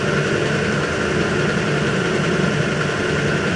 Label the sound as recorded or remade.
recorded